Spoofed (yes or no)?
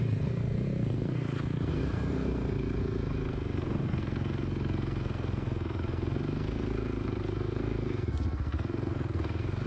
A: yes